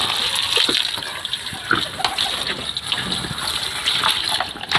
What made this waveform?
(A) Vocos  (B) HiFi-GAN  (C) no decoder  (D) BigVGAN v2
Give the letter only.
C